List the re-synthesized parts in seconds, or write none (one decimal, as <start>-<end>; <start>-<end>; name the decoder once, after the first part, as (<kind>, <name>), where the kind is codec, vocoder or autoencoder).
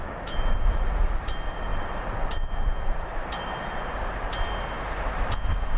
none